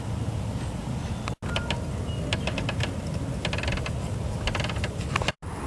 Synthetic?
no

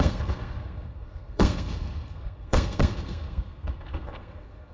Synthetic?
yes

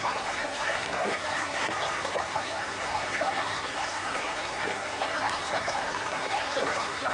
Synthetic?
yes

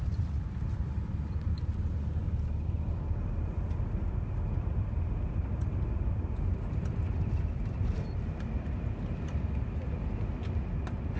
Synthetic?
no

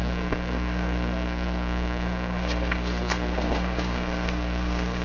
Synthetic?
yes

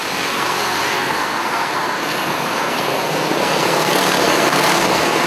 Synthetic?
yes